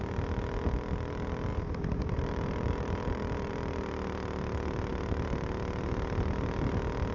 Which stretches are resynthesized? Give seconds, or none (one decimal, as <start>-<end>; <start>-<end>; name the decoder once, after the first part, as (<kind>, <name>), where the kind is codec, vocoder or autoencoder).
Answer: 1.5-3.5 (vocoder, BigVGAN v2)